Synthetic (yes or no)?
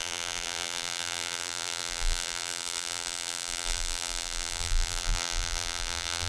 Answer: yes